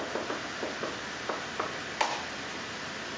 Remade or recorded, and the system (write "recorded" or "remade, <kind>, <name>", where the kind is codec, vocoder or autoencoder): remade, vocoder, BigVGAN v2